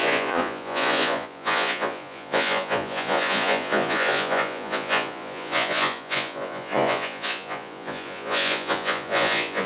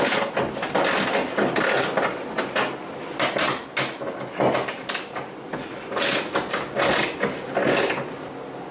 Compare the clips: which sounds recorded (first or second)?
second